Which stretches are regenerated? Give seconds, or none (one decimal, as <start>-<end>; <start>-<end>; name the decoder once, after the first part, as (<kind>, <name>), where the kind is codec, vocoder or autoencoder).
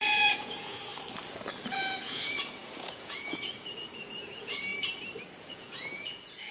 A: 0.0-0.9 (vocoder, Vocos); 1.7-4.7; 5.4-6.5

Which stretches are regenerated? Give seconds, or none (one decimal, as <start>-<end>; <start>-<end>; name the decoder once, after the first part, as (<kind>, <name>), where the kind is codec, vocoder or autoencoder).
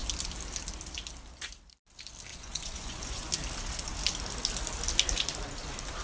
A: 2.3-3.3 (vocoder, Vocos)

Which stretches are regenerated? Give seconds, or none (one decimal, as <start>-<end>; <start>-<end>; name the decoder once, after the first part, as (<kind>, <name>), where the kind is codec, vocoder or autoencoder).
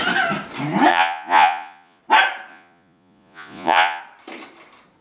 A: 0.9-2.0 (vocoder, Vocos); 2.5-4.0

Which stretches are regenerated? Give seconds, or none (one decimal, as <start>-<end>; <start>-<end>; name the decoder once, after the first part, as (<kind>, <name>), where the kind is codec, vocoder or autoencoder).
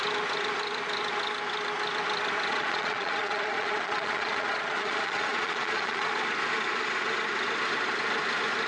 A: 2.5-6.1 (vocoder, Vocos)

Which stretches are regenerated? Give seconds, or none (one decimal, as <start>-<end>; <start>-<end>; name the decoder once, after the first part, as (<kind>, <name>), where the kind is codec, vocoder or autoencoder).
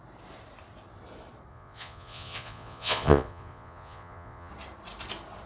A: 1.5-4.5 (vocoder, Vocos)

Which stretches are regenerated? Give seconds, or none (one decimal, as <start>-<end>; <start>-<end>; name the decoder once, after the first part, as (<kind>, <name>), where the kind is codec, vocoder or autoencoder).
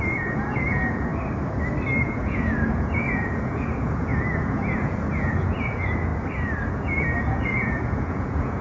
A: 0.0-1.1 (vocoder, Vocos); 2.0-6.1; 6.7-8.6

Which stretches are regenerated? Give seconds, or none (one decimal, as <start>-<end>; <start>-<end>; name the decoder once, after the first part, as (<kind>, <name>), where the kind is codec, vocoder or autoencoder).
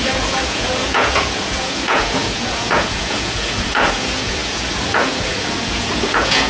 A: 0.0-6.5 (vocoder, Vocos)